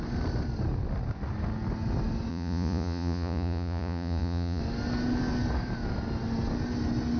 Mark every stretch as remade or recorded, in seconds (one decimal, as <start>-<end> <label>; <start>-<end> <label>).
0.0-2.3 recorded; 2.3-4.6 remade; 4.6-7.2 recorded